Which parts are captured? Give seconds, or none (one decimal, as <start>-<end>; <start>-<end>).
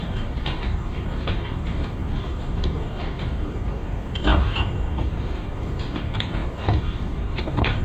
none